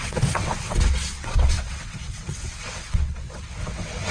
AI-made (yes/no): yes